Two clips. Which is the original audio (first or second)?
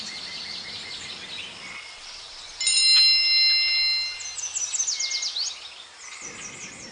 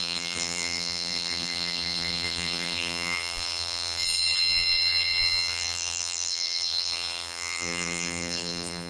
first